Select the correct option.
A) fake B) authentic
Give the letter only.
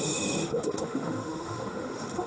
A